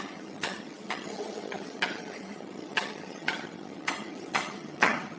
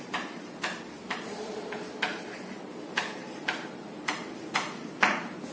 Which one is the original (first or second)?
second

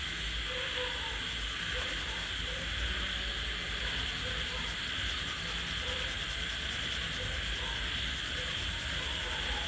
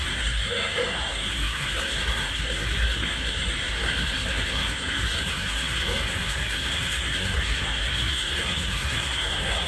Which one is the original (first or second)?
first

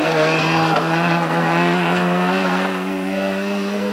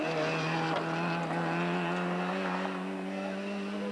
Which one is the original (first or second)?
second